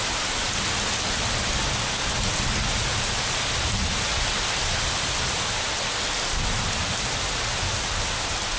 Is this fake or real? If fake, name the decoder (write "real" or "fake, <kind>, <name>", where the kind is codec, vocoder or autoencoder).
real